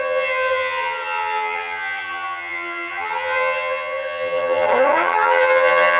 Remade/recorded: remade